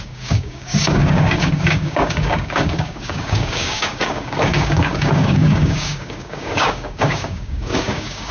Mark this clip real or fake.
fake